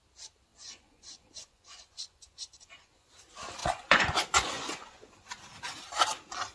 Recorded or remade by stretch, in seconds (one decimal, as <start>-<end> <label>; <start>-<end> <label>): 0.0-0.5 recorded; 0.5-3.1 remade; 3.1-3.6 recorded; 3.6-5.3 remade; 5.3-6.5 recorded